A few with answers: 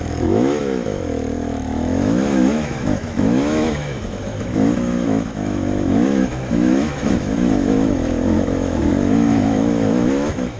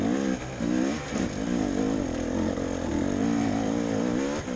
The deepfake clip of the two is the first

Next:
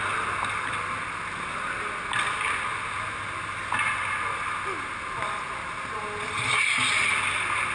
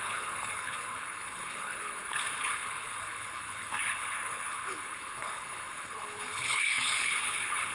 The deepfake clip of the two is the second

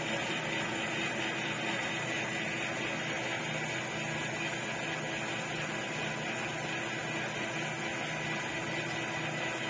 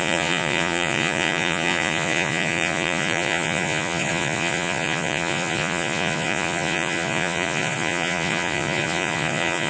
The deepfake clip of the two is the second